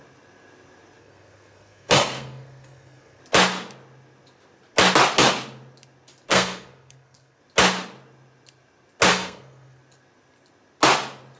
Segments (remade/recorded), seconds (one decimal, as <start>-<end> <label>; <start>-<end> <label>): 0.0-1.0 recorded; 1.0-3.2 remade; 3.2-6.3 recorded; 6.3-7.4 remade; 7.4-9.1 recorded; 9.1-9.8 remade; 9.8-11.4 recorded